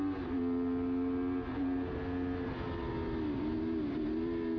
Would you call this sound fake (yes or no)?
no